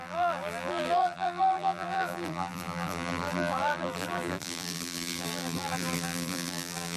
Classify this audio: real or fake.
fake